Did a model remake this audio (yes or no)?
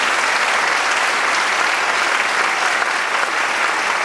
no